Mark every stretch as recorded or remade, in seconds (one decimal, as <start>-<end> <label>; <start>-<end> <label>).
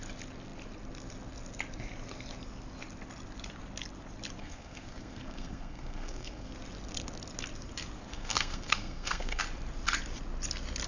0.0-4.4 recorded; 4.4-6.5 remade; 6.5-8.1 recorded; 8.1-9.4 remade; 9.4-10.9 recorded